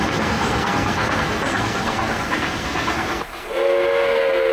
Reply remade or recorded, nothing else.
remade